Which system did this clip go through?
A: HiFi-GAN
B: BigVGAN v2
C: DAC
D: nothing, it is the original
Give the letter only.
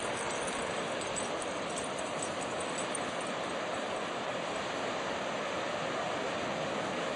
D